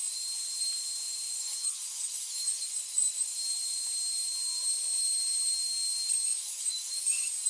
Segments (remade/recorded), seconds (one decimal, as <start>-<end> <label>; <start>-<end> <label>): 0.0-1.4 recorded; 1.4-2.7 remade; 2.7-6.3 recorded; 6.3-7.0 remade; 7.0-7.5 recorded